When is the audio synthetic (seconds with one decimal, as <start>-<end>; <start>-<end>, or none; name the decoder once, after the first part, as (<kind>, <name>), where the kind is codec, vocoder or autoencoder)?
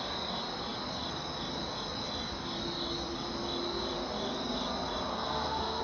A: 5.1-5.8 (codec, SNAC)